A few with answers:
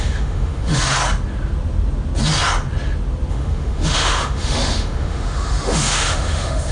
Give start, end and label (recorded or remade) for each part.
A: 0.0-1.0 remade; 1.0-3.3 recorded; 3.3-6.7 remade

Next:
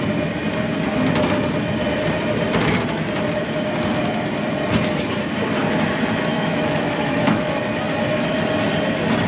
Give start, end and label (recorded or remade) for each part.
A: 0.0-6.3 recorded; 6.3-7.5 remade; 7.5-9.3 recorded

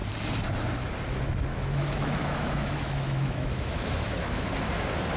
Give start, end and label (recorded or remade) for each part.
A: 0.0-1.5 recorded; 1.5-4.5 remade; 4.5-5.2 recorded

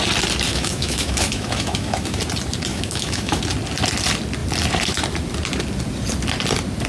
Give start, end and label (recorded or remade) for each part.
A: 0.0-0.5 recorded; 0.5-2.2 remade; 2.2-2.7 recorded; 2.7-3.4 remade; 3.4-6.9 recorded

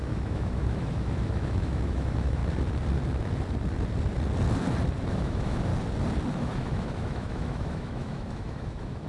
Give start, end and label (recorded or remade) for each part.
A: 0.0-2.4 remade; 2.4-5.1 recorded; 5.1-5.7 remade; 5.7-6.3 recorded; 6.3-9.1 remade

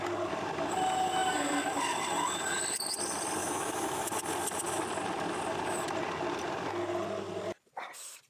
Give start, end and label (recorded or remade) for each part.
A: 0.0-3.4 recorded; 3.4-4.1 remade; 4.1-8.3 recorded

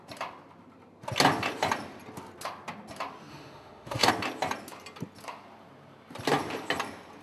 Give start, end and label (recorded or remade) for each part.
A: 0.0-3.3 recorded; 3.3-4.1 remade; 4.1-7.2 recorded

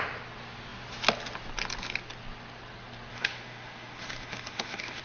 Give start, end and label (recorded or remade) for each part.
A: 0.0-3.1 recorded; 3.1-5.0 remade